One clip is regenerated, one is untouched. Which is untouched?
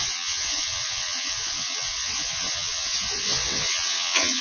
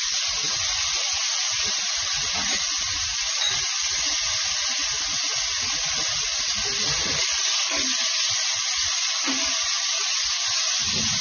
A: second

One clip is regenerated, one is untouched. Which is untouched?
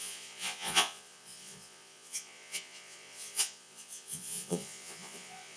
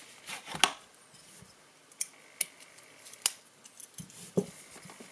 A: second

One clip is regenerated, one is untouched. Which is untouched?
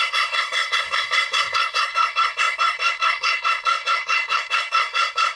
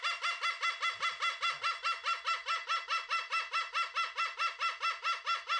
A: second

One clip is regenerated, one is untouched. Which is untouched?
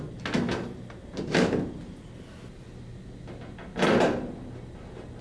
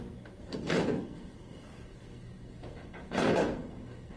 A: first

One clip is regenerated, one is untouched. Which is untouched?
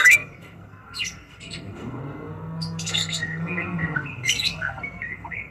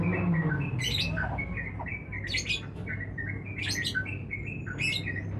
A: second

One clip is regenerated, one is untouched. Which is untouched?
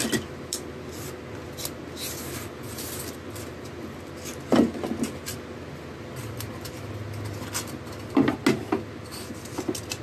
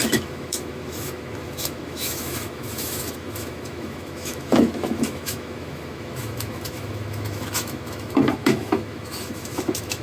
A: first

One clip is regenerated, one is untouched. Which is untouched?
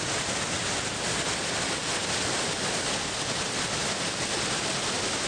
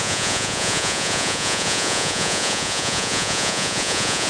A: first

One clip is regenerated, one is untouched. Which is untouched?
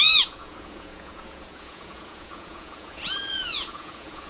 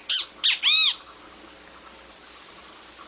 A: second